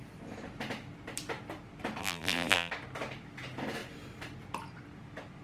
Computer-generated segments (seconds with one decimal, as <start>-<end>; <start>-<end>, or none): 2.0-2.7